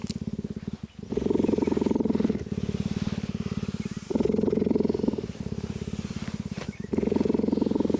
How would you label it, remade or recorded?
recorded